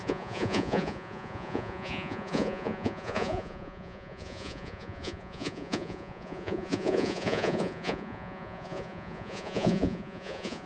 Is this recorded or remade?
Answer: remade